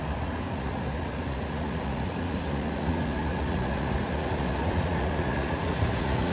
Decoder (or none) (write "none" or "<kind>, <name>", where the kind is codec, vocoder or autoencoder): vocoder, Vocos